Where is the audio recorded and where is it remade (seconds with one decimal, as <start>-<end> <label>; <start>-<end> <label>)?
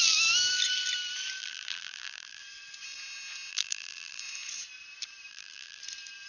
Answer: 0.0-1.4 recorded; 1.4-2.4 remade; 2.4-3.5 recorded; 3.5-4.2 remade; 4.2-5.3 recorded; 5.3-5.8 remade; 5.8-6.3 recorded